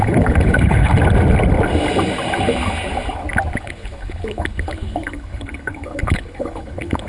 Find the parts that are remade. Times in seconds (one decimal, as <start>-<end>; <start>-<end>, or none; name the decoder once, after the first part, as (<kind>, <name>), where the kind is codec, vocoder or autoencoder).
0.0-0.9 (codec, HILCodec); 3.6-7.1